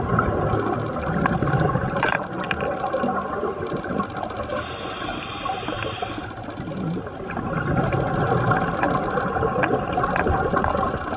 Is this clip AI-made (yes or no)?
no